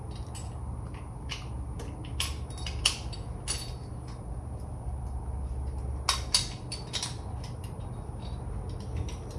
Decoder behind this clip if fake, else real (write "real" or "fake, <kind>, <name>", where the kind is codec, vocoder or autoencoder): real